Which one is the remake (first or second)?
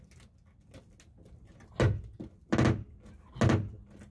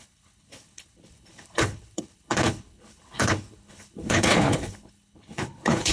second